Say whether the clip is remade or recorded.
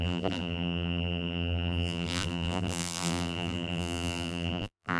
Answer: remade